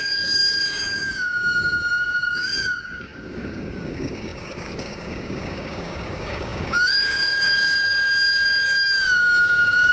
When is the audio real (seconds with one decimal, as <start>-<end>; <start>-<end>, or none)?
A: none